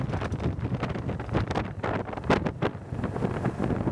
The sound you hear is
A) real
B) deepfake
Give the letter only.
A